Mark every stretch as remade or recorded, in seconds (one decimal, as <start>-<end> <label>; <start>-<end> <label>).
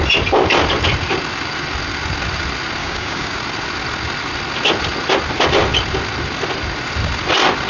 0.0-2.8 recorded; 2.8-3.4 remade; 3.4-7.7 recorded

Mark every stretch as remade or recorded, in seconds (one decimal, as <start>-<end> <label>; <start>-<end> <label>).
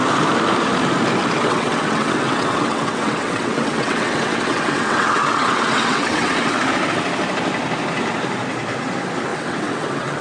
0.0-1.4 recorded; 1.4-6.6 remade; 6.6-9.3 recorded; 9.3-10.2 remade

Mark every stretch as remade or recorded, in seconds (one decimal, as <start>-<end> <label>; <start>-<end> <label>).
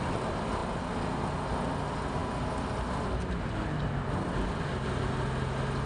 0.0-5.9 recorded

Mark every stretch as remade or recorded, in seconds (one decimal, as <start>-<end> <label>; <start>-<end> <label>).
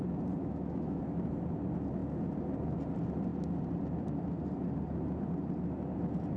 0.0-0.4 recorded; 0.4-1.0 remade; 1.0-6.4 recorded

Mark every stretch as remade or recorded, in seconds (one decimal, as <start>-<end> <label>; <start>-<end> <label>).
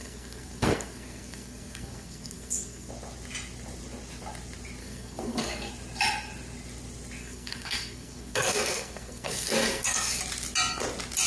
0.0-2.9 remade; 2.9-4.8 recorded; 4.8-5.7 remade; 5.7-7.2 recorded; 7.2-10.2 remade; 10.2-11.3 recorded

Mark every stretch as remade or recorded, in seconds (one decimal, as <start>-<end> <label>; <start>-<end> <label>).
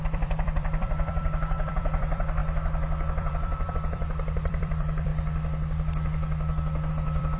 0.0-5.1 remade; 5.1-6.9 recorded; 6.9-7.4 remade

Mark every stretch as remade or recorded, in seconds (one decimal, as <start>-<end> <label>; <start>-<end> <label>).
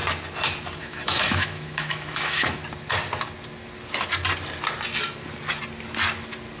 0.0-0.8 recorded; 0.8-2.6 remade; 2.6-6.6 recorded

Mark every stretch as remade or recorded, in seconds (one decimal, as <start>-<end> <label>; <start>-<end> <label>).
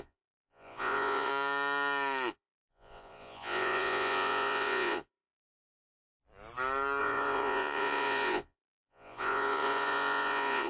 0.0-1.3 remade; 1.3-2.3 recorded; 2.3-5.7 remade; 5.7-7.0 recorded; 7.0-10.7 remade